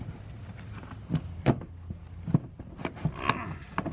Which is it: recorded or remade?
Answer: recorded